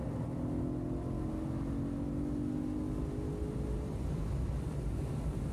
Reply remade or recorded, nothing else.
recorded